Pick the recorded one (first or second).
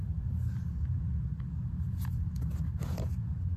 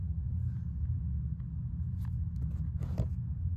second